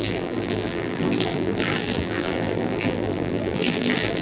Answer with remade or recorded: remade